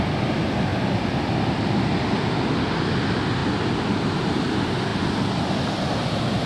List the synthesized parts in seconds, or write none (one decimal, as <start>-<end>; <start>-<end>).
none